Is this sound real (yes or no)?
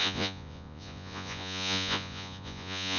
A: no